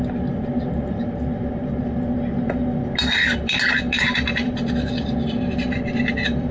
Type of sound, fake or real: real